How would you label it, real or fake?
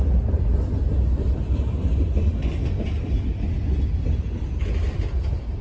fake